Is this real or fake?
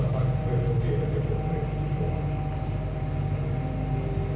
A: real